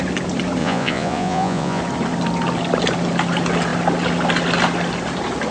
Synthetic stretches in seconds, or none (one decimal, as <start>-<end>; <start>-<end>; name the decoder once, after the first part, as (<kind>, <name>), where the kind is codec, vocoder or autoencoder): 0.6-1.8 (vocoder, Vocos)